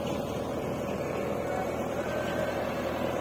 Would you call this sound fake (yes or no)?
no